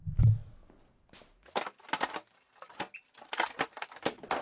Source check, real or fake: real